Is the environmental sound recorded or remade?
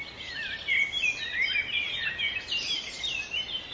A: recorded